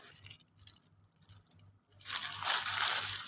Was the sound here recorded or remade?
recorded